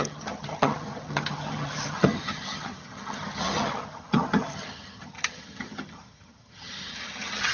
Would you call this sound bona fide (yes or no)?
no